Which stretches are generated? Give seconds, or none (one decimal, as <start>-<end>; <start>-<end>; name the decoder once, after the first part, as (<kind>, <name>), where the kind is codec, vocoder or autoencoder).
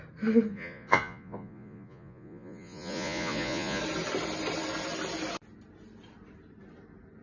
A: 0.5-3.8 (vocoder, Vocos)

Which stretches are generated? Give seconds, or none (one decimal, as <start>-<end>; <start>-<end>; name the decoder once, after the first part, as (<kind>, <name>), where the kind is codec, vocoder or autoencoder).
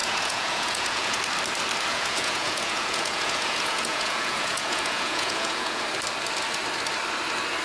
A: 0.0-1.2 (vocoder, Vocos); 1.9-5.8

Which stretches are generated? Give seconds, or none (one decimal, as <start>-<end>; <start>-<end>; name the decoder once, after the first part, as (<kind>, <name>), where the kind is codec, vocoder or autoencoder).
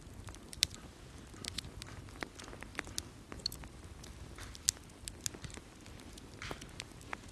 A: none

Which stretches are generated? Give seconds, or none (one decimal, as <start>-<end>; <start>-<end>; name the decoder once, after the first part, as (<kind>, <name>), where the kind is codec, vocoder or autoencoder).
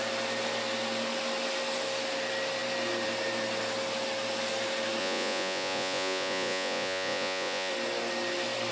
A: 5.0-7.7 (vocoder, Vocos)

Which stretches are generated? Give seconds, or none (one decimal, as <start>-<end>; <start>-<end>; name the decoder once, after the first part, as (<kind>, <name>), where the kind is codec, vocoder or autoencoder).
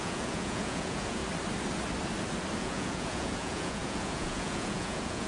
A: 0.0-1.2 (vocoder, Vocos); 2.6-5.3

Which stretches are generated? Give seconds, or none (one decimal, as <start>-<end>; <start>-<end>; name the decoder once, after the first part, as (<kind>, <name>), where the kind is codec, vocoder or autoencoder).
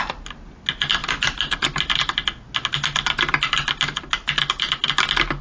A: none